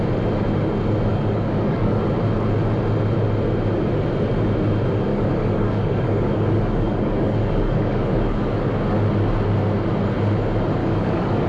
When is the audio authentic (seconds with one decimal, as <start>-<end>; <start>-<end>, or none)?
0.0-1.1; 2.0-5.1; 9.0-10.8